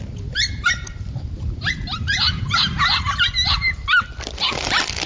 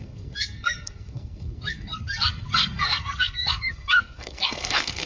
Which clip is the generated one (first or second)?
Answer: second